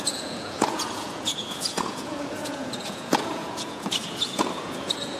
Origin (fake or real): fake